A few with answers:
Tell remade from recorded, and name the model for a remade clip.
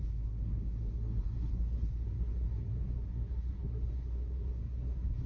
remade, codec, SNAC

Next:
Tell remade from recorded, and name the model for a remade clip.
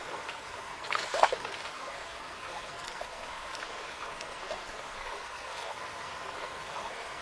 remade, codec, SNAC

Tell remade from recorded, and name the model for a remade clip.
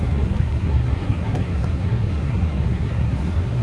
remade, codec, SNAC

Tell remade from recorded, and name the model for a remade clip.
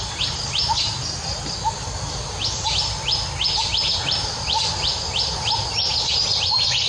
recorded